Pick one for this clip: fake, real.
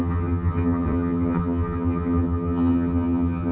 fake